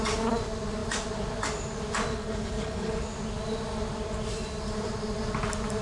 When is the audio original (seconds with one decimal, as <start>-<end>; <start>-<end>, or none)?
0.0-2.1; 3.0-5.8